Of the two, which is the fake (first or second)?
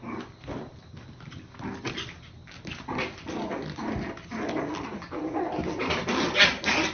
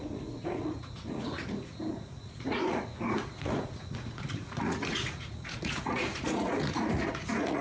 second